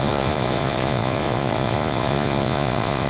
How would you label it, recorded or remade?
remade